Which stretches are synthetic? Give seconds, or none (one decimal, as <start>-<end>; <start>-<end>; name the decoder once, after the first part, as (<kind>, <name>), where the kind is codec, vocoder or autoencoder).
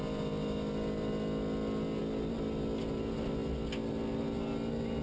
none